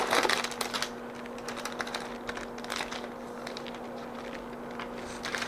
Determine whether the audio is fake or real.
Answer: real